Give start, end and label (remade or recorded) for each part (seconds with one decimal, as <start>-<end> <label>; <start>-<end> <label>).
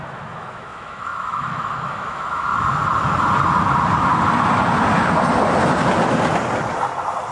0.0-2.5 remade; 2.5-7.3 recorded